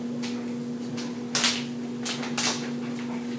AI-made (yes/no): no